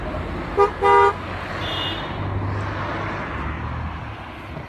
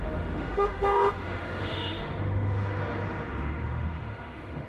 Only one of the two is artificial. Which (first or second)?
second